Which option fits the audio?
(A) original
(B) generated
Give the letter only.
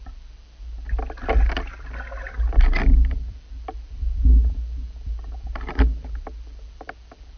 A